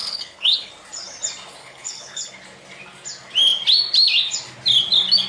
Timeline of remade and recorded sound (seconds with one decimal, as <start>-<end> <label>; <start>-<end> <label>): 0.0-0.7 remade; 0.7-1.6 recorded; 1.6-2.3 remade; 2.3-5.3 recorded